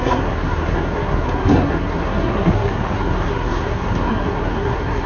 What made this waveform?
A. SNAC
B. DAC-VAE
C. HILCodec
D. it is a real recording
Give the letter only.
A